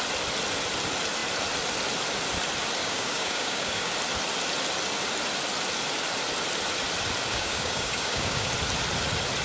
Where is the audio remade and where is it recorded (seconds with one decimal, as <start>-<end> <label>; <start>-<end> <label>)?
0.0-2.8 recorded; 2.8-3.9 remade; 3.9-7.3 recorded; 7.3-8.5 remade; 8.5-9.4 recorded